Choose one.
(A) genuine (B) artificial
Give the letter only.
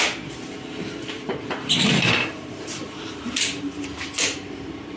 B